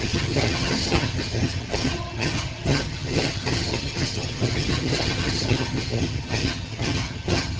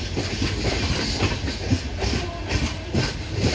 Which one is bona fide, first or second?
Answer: second